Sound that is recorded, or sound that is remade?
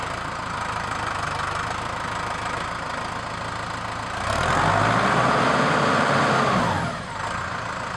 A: recorded